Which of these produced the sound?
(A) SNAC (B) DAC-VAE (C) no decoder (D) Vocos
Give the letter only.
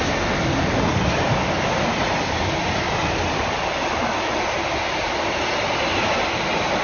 C